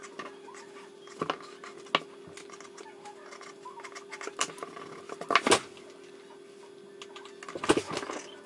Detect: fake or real real